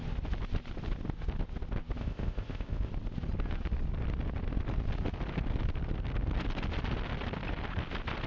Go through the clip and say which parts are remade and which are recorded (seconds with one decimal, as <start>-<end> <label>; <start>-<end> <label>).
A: 0.0-2.0 recorded; 2.0-2.9 remade; 2.9-8.3 recorded